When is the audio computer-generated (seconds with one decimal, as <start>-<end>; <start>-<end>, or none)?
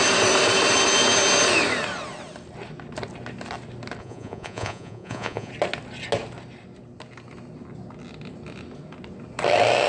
4.0-5.5